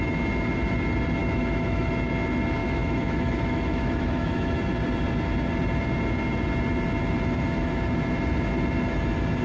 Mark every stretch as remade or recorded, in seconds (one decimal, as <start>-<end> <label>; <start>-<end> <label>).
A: 0.0-1.2 recorded; 1.2-1.9 remade; 1.9-2.6 recorded; 2.6-4.5 remade; 4.5-9.4 recorded